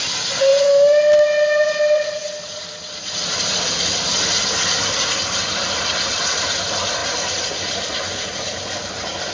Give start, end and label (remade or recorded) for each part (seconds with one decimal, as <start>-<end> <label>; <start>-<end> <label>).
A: 0.0-9.3 recorded